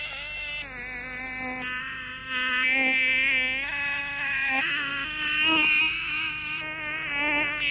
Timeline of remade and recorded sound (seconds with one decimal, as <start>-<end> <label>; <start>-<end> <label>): 0.0-0.5 remade; 0.5-1.8 recorded; 1.8-7.7 remade